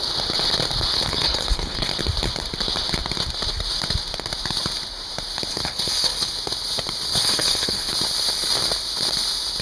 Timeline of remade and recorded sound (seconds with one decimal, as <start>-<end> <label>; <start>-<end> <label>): 0.0-0.9 recorded; 0.9-1.9 remade; 1.9-5.5 recorded; 5.5-6.3 remade; 6.3-7.1 recorded; 7.1-7.9 remade; 7.9-9.6 recorded